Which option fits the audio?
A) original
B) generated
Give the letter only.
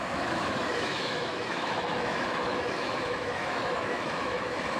B